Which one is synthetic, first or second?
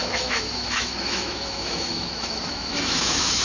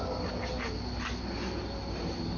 first